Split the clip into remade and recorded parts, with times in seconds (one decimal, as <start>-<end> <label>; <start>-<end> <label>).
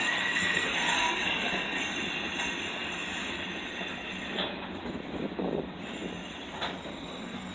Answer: 0.0-1.8 remade; 1.8-6.9 recorded; 6.9-7.5 remade